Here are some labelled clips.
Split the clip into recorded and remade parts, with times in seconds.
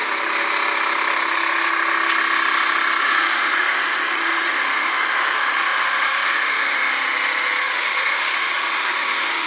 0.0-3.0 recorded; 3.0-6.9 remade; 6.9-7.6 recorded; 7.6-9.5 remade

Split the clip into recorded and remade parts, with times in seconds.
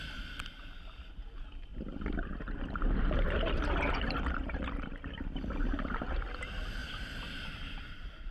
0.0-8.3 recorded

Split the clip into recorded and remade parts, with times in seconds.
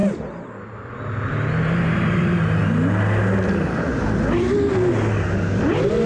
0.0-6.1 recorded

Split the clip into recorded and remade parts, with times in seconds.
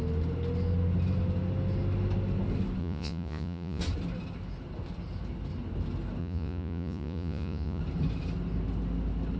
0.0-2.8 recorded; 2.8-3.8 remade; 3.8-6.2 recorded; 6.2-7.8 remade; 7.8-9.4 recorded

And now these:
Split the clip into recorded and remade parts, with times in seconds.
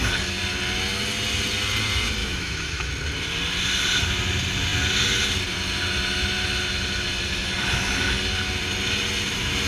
0.0-2.2 recorded; 2.2-2.9 remade; 2.9-9.7 recorded